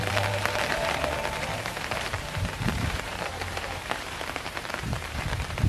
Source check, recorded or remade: remade